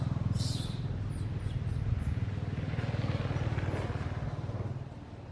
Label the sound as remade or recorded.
recorded